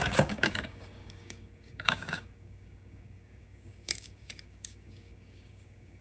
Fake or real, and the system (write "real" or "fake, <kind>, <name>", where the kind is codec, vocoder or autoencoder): fake, codec, DAC